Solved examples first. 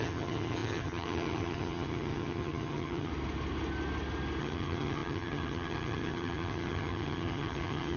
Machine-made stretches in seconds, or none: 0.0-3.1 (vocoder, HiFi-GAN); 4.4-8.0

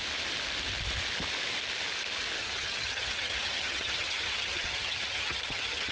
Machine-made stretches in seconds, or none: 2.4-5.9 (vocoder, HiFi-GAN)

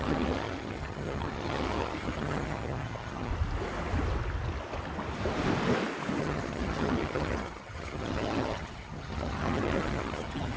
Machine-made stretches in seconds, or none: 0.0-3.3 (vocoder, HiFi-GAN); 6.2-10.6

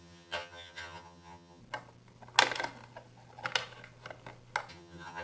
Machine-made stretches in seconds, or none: 0.0-1.6 (vocoder, HiFi-GAN); 4.7-5.2